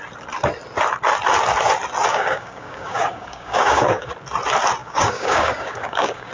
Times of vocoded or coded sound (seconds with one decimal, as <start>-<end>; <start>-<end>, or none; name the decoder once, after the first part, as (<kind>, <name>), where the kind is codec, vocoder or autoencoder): 2.1-4.1 (codec, DAC); 4.8-6.3